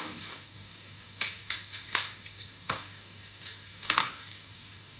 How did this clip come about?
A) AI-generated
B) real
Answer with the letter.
A